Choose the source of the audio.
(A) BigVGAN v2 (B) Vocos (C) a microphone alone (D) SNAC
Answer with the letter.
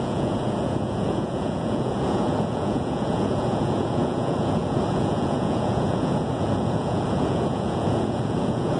B